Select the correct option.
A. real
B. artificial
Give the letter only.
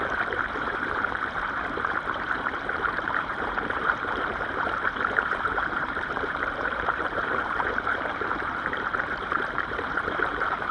B